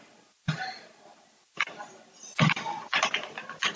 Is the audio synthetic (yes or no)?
no